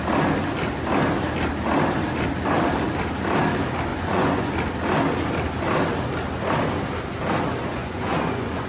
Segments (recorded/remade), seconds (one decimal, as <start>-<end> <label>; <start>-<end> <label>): 0.0-3.9 recorded; 3.9-4.5 remade; 4.5-7.6 recorded; 7.6-8.7 remade